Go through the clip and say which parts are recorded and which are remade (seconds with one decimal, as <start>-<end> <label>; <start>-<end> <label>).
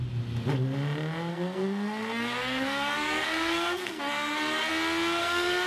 0.0-1.3 recorded; 1.3-4.7 remade; 4.7-5.2 recorded; 5.2-5.7 remade